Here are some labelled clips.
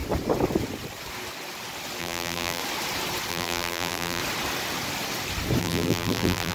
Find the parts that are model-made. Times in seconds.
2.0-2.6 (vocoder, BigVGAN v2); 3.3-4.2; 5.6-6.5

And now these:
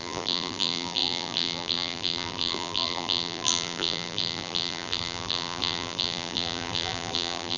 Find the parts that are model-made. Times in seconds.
0.0-7.6 (vocoder, BigVGAN v2)

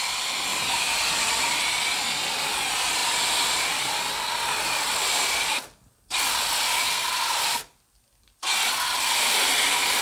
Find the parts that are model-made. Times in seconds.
0.5-1.3 (vocoder, BigVGAN v2); 7.0-7.6

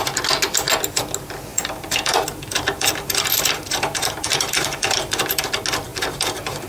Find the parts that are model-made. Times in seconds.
1.5-5.5 (vocoder, BigVGAN v2); 5.9-6.7

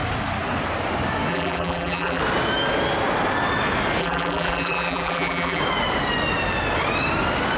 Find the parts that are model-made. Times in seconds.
1.3-2.2 (vocoder, BigVGAN v2); 4.0-5.6